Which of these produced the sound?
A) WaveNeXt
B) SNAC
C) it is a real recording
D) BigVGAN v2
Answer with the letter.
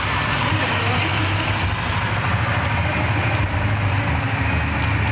C